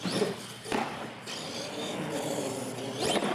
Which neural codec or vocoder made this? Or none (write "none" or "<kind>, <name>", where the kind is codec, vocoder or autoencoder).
none